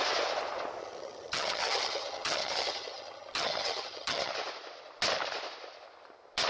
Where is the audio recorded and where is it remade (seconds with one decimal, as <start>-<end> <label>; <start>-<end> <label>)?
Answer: 0.0-0.8 recorded; 0.8-4.3 remade; 4.3-6.5 recorded